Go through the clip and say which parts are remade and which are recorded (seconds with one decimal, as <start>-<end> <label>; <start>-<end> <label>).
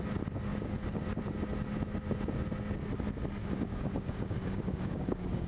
0.0-0.5 recorded; 0.5-1.0 remade; 1.0-3.4 recorded; 3.4-5.5 remade